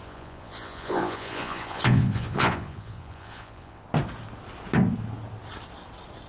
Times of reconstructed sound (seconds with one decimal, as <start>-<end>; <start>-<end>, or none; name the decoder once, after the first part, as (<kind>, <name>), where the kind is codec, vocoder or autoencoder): 0.0-3.8 (vocoder, Vocos)